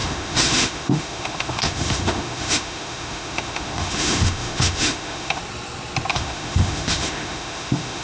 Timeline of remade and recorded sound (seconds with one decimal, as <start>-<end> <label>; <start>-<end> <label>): 0.0-5.4 remade; 5.4-6.1 recorded; 6.1-8.0 remade